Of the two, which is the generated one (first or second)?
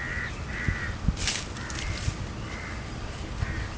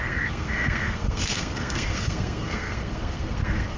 second